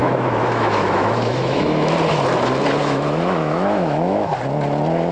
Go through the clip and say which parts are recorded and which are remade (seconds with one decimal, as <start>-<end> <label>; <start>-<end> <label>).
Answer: 0.0-1.9 remade; 1.9-2.8 recorded; 2.8-4.3 remade; 4.3-5.1 recorded